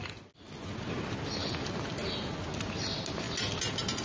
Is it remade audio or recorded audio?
recorded